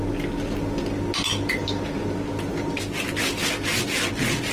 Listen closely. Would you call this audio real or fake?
real